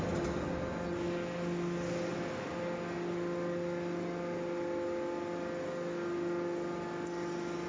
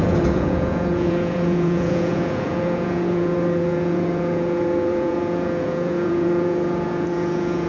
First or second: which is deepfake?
second